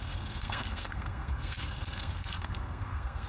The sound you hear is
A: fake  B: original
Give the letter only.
A